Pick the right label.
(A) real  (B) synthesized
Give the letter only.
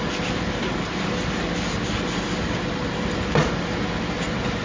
A